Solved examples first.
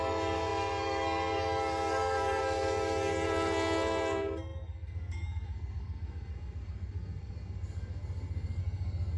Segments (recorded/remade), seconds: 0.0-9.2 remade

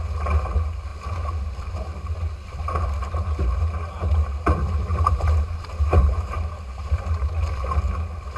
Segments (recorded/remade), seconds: 0.0-4.9 recorded; 4.9-7.0 remade; 7.0-8.4 recorded

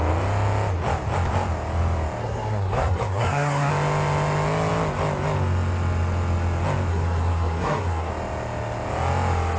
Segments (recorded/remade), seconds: 0.0-2.2 recorded; 2.2-3.7 remade; 3.7-6.9 recorded; 6.9-8.1 remade; 8.1-9.6 recorded

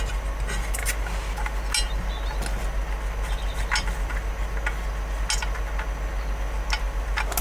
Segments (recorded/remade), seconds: 0.0-7.4 recorded

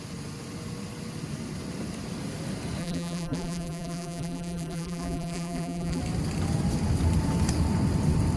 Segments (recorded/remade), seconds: 0.0-2.8 recorded; 2.8-6.0 remade; 6.0-8.4 recorded

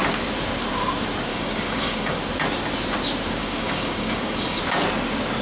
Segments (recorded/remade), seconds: 0.0-1.3 recorded; 1.3-2.2 remade; 2.2-3.4 recorded; 3.4-4.6 remade; 4.6-5.4 recorded

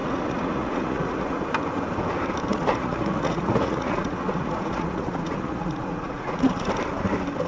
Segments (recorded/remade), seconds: 0.0-1.5 remade; 1.5-2.5 recorded; 2.5-6.7 remade; 6.7-7.5 recorded

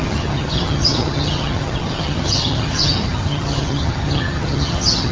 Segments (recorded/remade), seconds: 0.0-5.1 remade